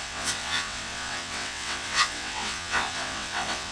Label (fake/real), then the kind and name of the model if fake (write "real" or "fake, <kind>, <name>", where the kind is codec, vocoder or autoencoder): fake, vocoder, WaveNeXt